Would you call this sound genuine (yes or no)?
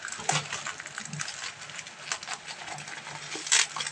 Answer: yes